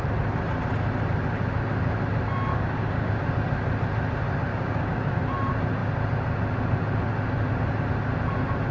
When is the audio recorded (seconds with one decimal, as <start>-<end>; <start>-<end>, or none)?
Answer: 0.0-2.5; 3.2-4.5; 5.2-8.7